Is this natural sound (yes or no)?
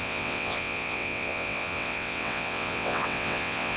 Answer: no